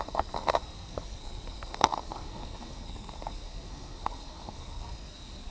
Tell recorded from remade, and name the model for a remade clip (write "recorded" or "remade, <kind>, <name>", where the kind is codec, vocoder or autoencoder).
remade, codec, SNAC